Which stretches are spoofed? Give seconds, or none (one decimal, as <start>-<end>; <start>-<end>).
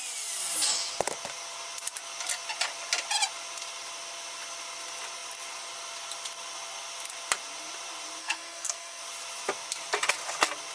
8.2-9.0